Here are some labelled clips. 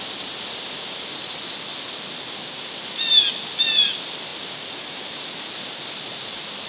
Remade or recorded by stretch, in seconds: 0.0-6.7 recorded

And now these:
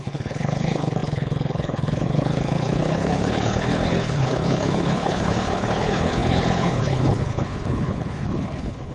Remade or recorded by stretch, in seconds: 0.0-8.9 remade